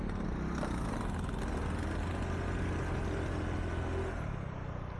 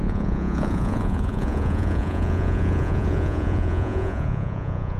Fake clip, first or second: second